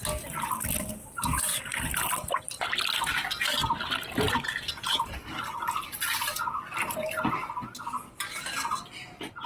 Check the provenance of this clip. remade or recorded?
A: recorded